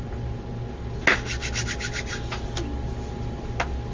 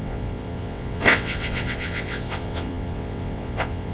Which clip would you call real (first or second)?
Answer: first